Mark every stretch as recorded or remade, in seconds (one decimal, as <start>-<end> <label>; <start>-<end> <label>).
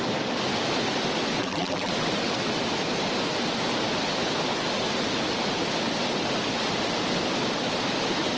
0.0-1.4 recorded; 1.4-1.9 remade; 1.9-8.4 recorded